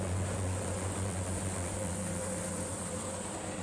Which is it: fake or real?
fake